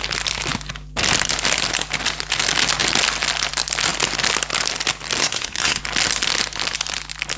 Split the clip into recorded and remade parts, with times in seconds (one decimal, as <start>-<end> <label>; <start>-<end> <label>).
0.0-5.2 recorded; 5.2-5.8 remade; 5.8-7.4 recorded